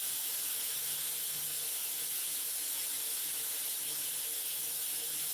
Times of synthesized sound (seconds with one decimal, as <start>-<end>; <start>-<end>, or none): 0.0-5.3